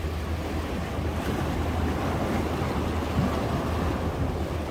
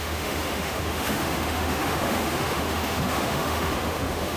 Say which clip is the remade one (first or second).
second